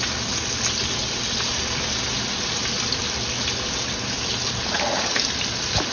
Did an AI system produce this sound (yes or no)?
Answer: no